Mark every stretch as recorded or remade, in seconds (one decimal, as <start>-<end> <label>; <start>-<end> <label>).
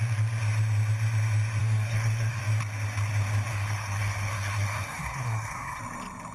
0.0-1.6 recorded; 1.6-2.4 remade; 2.4-3.5 recorded; 3.5-5.8 remade; 5.8-6.3 recorded